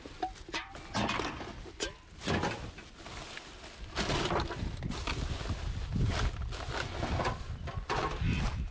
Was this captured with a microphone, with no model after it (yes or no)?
yes